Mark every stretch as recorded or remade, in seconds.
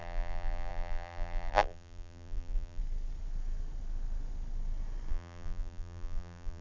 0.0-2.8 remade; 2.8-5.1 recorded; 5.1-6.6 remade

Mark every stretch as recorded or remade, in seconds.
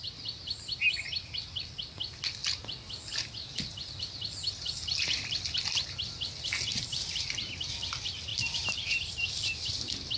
0.0-6.7 recorded; 6.7-7.7 remade; 7.7-8.3 recorded; 8.3-9.3 remade; 9.3-10.2 recorded